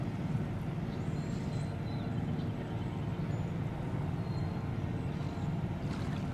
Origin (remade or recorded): recorded